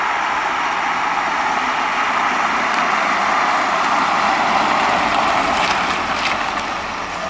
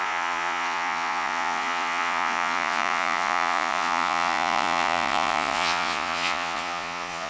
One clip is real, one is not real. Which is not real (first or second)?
second